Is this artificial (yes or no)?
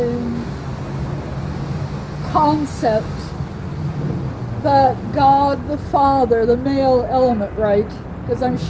no